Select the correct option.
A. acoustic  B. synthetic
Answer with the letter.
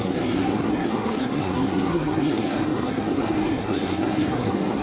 B